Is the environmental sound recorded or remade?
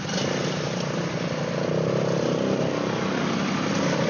recorded